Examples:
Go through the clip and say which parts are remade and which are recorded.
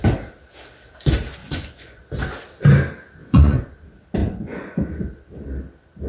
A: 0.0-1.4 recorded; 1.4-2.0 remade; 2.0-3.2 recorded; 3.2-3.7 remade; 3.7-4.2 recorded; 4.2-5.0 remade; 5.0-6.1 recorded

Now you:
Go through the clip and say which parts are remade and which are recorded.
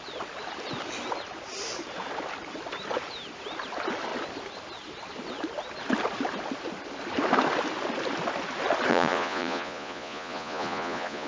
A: 0.0-8.9 recorded; 8.9-11.3 remade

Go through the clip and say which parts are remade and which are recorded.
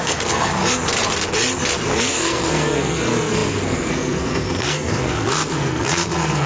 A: 0.0-0.5 remade; 0.5-1.9 recorded; 1.9-6.5 remade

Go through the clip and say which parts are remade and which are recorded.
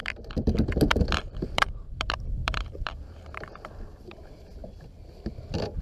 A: 0.0-5.8 remade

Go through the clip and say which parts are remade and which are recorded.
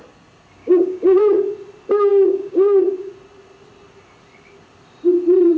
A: 0.0-0.6 recorded; 0.6-1.2 remade; 1.2-2.1 recorded; 2.1-2.8 remade; 2.8-5.6 recorded